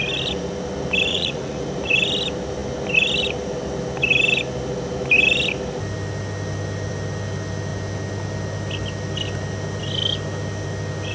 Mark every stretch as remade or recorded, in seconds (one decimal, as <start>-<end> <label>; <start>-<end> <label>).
0.0-1.1 recorded; 1.1-1.6 remade; 1.6-11.1 recorded